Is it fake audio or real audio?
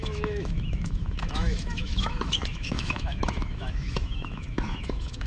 fake